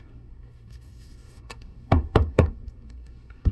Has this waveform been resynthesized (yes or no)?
yes